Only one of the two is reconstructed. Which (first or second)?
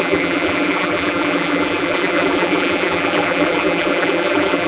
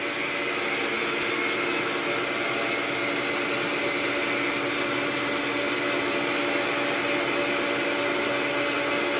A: first